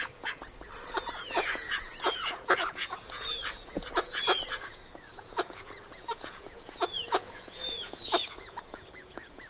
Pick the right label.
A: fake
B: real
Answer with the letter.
A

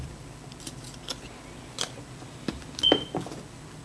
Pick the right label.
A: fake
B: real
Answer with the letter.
B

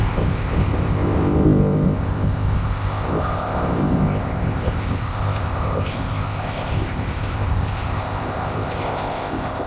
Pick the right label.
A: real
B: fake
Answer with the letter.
B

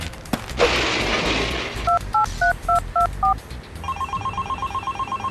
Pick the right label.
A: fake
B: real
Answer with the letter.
B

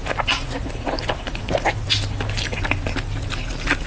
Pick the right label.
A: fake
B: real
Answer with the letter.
B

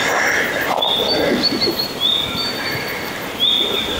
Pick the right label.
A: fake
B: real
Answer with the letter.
B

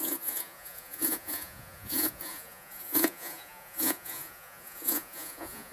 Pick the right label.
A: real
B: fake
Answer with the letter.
B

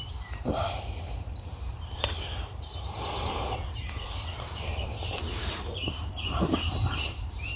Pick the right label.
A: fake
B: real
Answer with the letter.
A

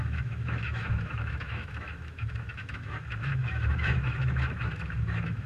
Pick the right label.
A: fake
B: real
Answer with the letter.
A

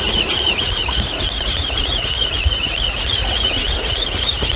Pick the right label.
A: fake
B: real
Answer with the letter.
A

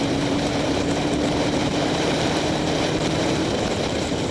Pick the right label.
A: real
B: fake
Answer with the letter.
B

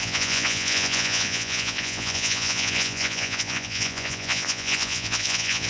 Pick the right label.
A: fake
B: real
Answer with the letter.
A